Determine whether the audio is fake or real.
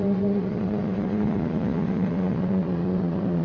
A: fake